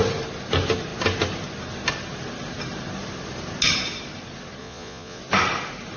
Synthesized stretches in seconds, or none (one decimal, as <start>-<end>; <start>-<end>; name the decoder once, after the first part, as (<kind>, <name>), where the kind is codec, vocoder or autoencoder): 4.6-5.2 (vocoder, Vocos)